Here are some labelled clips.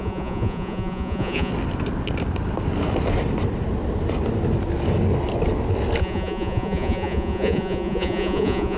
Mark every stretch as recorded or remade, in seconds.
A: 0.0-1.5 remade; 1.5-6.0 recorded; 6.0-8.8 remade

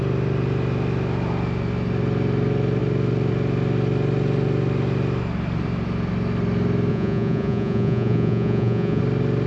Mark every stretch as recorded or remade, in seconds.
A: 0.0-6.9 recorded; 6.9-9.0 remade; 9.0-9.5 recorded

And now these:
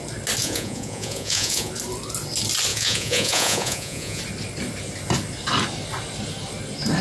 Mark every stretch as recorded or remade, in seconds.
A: 0.0-0.4 recorded; 0.4-1.7 remade; 1.7-2.7 recorded; 2.7-4.2 remade; 4.2-7.0 recorded

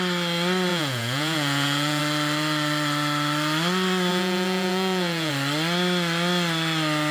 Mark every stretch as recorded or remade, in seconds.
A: 0.0-0.7 recorded; 0.7-2.0 remade; 2.0-4.1 recorded; 4.1-5.3 remade; 5.3-7.1 recorded

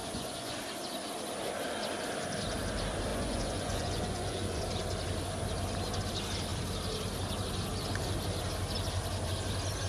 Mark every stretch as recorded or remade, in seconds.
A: 0.0-0.6 remade; 0.6-3.1 recorded; 3.1-4.6 remade; 4.6-9.9 recorded